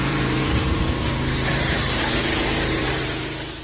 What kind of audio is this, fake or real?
fake